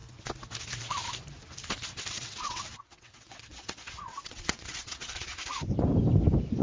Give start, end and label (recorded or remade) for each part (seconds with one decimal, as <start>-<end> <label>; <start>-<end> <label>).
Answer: 0.0-2.1 recorded; 2.1-5.3 remade; 5.3-6.6 recorded